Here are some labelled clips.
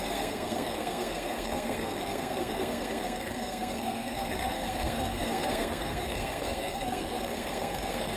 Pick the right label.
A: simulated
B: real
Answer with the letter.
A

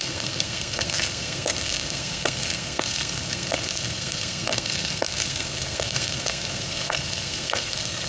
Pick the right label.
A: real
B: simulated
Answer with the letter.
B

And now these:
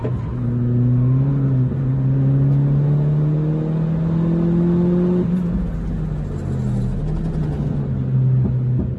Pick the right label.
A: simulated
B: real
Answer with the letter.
B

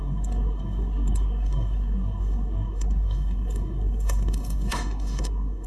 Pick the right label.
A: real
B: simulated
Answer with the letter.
B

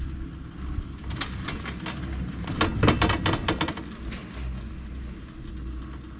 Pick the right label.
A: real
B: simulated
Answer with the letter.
A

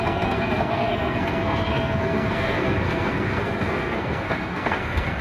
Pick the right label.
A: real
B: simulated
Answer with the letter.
B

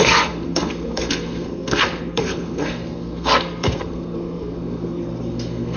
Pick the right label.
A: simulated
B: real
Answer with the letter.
A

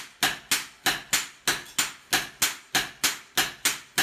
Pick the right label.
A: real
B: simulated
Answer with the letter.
A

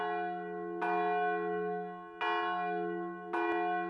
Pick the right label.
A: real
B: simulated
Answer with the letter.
A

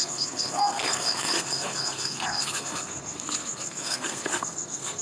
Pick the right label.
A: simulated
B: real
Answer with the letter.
A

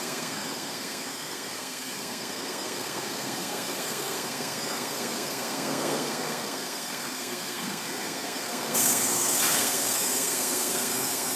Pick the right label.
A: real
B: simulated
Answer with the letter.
B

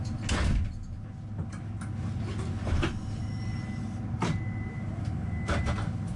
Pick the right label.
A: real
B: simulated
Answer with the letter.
A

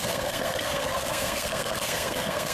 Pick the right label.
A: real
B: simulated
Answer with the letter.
B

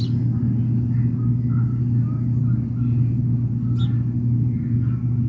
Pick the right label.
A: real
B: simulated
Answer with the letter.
A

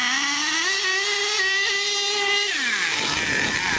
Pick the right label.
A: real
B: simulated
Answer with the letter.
A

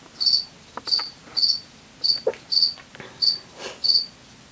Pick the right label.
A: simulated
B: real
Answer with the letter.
B